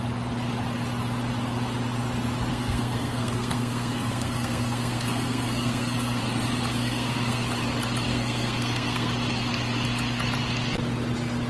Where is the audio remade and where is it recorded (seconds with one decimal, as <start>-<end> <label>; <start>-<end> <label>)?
0.0-2.5 recorded; 2.5-6.2 remade; 6.2-6.8 recorded; 6.8-7.4 remade; 7.4-8.1 recorded; 8.1-9.1 remade; 9.1-11.5 recorded